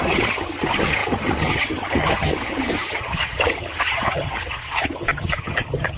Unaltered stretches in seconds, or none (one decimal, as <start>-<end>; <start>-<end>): none